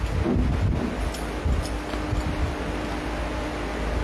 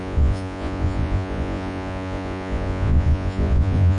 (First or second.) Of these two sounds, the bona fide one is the first